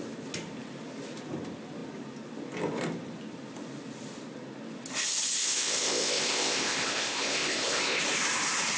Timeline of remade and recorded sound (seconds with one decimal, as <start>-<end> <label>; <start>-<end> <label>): 0.0-5.4 recorded; 5.4-8.0 remade; 8.0-8.8 recorded